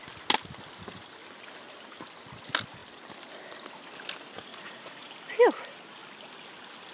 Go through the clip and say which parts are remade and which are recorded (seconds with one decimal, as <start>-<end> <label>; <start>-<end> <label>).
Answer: 0.0-4.5 recorded; 4.5-5.1 remade; 5.1-6.9 recorded